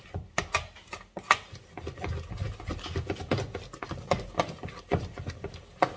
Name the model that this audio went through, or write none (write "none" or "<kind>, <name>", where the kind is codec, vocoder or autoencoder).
none